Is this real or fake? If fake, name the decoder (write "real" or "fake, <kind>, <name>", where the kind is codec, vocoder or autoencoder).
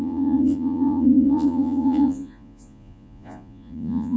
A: fake, vocoder, Vocos